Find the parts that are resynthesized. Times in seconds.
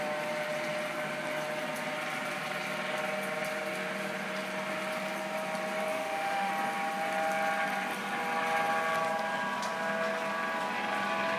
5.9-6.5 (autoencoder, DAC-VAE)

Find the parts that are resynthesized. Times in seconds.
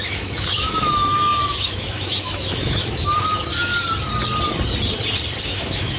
0.0-3.7 (autoencoder, DAC-VAE); 5.4-6.0